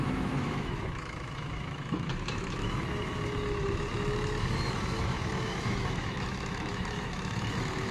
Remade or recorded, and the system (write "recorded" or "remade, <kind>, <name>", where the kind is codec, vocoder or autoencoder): remade, autoencoder, DAC-VAE